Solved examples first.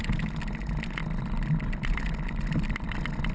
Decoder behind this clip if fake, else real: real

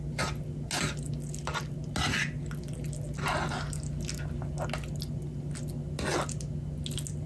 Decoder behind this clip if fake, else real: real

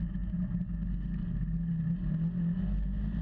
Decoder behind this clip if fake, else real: real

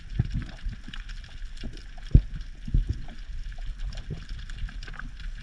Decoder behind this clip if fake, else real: real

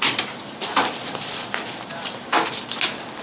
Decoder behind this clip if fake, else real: real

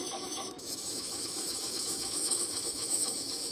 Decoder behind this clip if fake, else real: fake, autoencoder, DAC-VAE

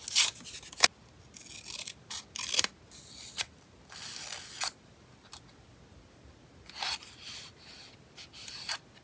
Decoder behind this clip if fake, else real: real